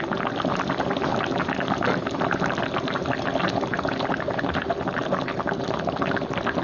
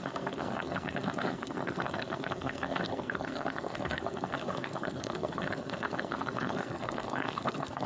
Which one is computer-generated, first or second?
second